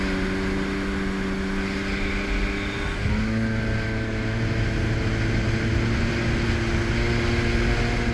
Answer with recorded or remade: recorded